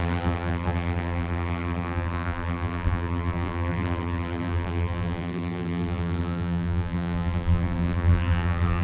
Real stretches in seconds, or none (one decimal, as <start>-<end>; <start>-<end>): none

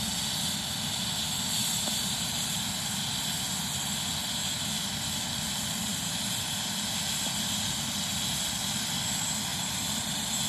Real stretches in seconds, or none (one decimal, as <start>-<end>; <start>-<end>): 0.0-1.6; 2.6-5.9; 6.5-9.5

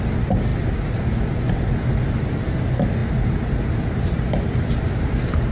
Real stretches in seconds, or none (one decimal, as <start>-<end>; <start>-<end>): 0.0-5.5

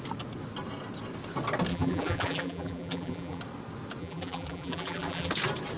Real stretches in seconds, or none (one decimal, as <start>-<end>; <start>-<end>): 0.0-1.7; 3.4-4.0; 5.3-5.8